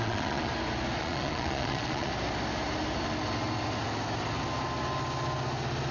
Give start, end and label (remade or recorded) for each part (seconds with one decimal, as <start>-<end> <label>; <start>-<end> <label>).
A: 0.0-0.5 remade; 0.5-1.0 recorded; 1.0-2.1 remade; 2.1-5.9 recorded